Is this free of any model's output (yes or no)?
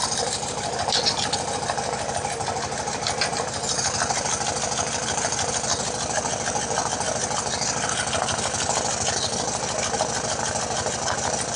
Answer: yes